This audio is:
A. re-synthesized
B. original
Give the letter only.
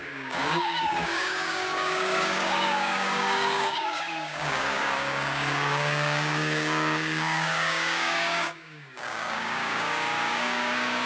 A